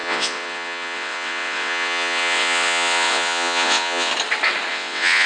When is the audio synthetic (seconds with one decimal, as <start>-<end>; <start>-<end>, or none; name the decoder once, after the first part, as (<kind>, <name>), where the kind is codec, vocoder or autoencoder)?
0.0-4.1 (vocoder, WaveNeXt); 4.7-5.3